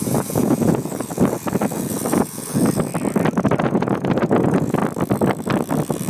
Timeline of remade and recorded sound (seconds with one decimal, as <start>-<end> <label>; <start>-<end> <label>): 0.0-2.9 remade; 2.9-3.6 recorded; 3.6-4.8 remade; 4.8-6.1 recorded

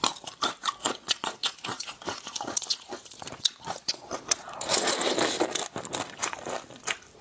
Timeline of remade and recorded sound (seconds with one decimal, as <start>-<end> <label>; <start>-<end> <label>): 0.0-0.8 recorded; 0.8-5.1 remade; 5.1-7.2 recorded

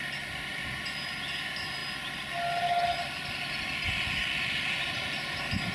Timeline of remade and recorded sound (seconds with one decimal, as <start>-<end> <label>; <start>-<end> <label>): 0.0-5.7 recorded